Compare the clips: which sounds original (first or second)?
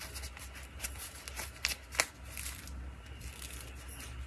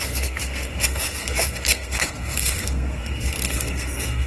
first